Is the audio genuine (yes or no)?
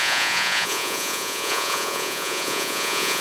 no